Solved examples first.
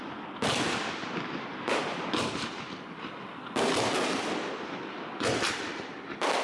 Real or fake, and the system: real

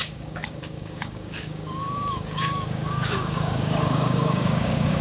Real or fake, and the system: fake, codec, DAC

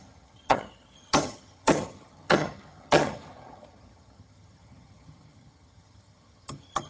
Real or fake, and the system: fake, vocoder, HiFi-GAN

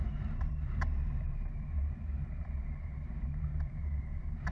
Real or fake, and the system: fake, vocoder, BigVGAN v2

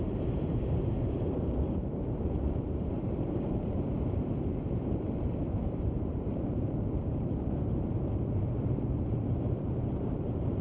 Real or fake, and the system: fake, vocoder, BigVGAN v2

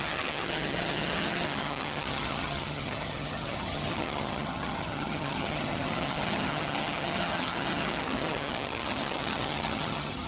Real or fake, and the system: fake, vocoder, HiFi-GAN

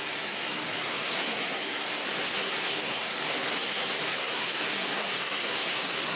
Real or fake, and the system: fake, codec, SNAC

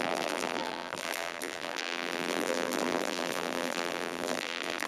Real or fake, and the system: fake, vocoder, BigVGAN v2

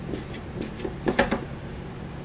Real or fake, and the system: real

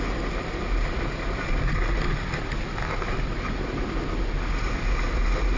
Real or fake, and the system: real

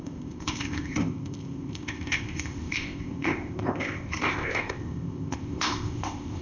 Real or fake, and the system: fake, codec, ZipCodec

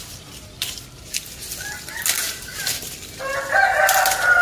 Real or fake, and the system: real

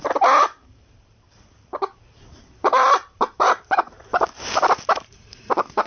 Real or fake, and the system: fake, vocoder, BigVGAN v2